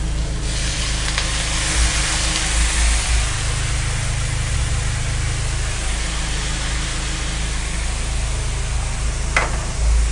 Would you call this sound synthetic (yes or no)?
no